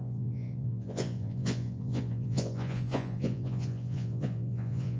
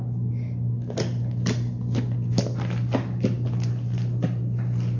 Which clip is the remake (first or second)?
first